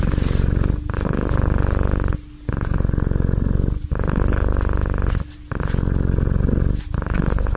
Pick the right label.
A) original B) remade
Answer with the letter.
A